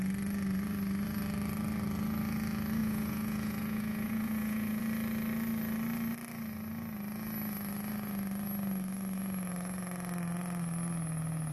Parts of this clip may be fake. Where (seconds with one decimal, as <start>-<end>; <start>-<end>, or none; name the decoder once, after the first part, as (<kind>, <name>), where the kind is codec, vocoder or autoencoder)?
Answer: 2.8-4.8 (vocoder, Vocos)